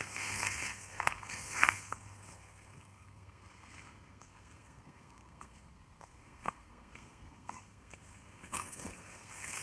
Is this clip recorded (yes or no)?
no